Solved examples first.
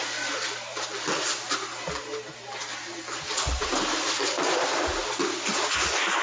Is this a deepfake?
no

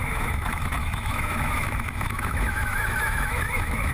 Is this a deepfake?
yes